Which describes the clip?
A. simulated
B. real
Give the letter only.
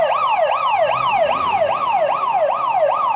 B